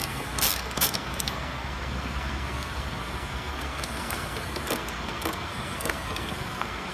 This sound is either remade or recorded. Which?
remade